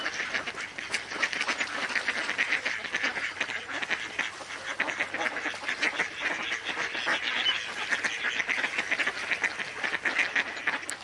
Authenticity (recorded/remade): recorded